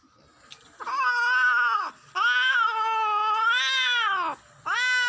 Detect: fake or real real